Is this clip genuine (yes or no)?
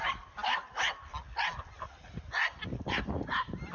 yes